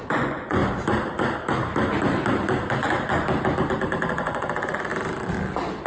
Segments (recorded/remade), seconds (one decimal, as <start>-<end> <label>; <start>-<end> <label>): 0.0-0.6 remade; 0.6-4.1 recorded; 4.1-4.9 remade; 4.9-5.9 recorded